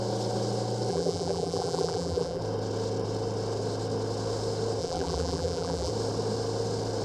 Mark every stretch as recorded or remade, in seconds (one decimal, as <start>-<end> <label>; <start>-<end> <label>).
0.0-0.9 recorded; 0.9-2.4 remade; 2.4-4.8 recorded; 4.8-5.9 remade; 5.9-7.0 recorded